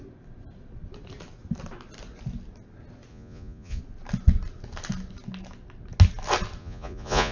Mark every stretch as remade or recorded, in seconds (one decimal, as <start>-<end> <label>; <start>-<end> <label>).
0.0-3.1 recorded; 3.1-3.8 remade; 3.8-6.6 recorded; 6.6-7.3 remade